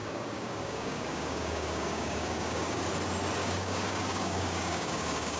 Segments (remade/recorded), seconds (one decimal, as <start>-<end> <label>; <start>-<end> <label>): 0.0-2.8 remade; 2.8-3.4 recorded; 3.4-5.4 remade

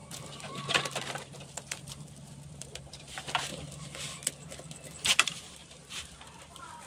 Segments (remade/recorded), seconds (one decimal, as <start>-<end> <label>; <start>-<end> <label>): 0.0-3.5 remade; 3.5-5.1 recorded; 5.1-6.9 remade